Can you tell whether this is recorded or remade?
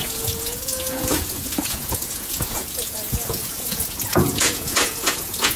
remade